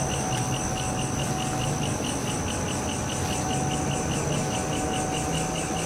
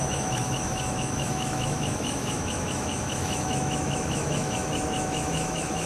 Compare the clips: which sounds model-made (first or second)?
second